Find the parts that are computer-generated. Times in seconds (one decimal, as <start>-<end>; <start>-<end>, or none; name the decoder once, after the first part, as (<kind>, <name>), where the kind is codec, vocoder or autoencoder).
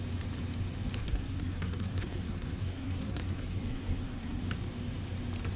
1.0-4.4 (codec, SNAC)